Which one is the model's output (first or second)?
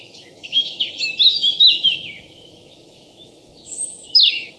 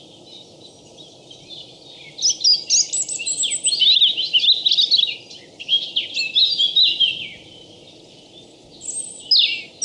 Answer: first